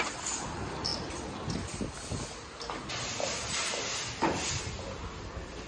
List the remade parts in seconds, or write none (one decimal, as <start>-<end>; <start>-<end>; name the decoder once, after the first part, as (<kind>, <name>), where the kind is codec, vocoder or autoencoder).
none